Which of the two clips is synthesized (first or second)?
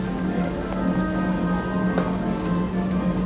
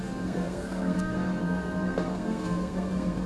second